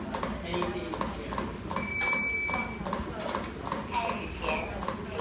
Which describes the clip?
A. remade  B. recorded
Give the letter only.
B